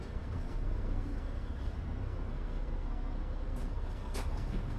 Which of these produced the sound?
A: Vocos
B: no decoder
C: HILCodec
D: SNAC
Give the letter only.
D